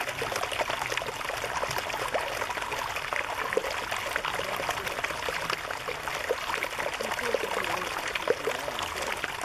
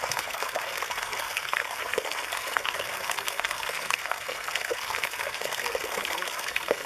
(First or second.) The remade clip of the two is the second